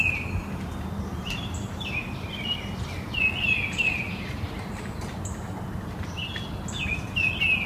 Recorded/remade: recorded